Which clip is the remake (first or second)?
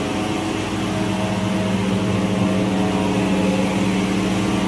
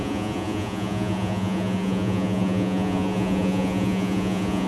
second